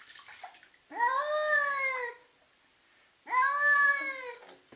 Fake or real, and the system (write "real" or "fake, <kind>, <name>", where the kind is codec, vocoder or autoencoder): real